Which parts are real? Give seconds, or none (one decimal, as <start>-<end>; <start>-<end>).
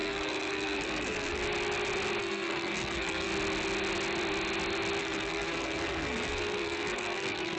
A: 1.4-2.2; 3.3-5.0